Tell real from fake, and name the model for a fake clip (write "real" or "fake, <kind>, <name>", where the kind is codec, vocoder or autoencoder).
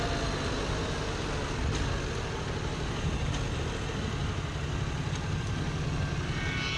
real